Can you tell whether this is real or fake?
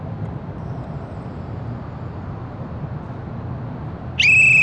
real